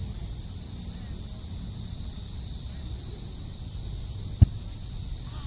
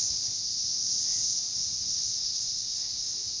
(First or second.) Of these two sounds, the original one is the first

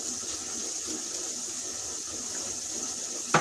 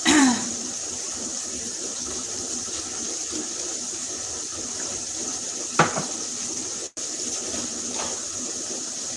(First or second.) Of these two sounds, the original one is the first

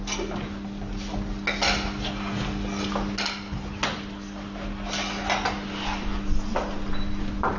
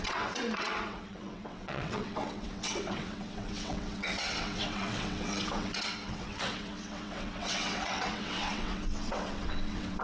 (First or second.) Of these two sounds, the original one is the first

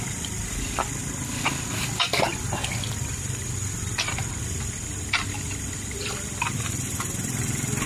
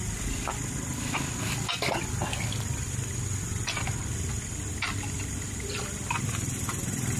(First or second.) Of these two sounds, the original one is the second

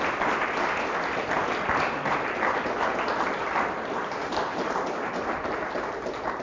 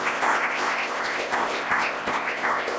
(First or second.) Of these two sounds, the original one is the first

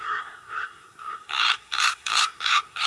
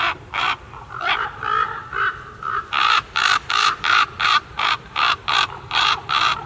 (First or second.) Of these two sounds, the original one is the second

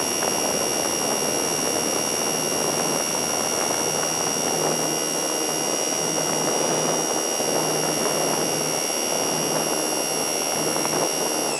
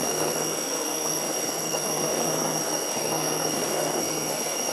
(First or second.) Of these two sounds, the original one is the first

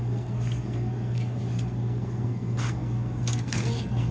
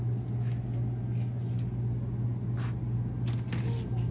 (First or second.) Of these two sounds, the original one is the second